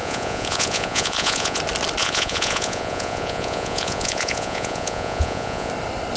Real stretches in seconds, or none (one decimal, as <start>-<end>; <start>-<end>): 1.6-2.0; 5.7-6.2